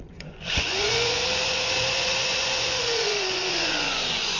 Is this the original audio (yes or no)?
no